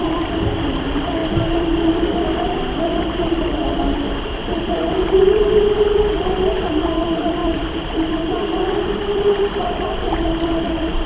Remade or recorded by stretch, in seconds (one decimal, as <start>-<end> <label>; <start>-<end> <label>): 0.0-11.1 remade